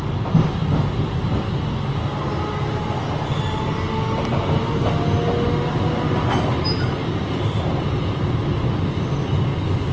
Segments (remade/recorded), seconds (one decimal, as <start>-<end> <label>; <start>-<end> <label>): 0.0-9.9 recorded